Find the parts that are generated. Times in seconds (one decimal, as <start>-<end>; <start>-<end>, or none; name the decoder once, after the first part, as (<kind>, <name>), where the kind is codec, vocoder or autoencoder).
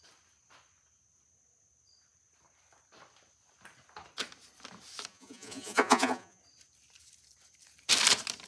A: 5.1-6.4 (vocoder, Vocos)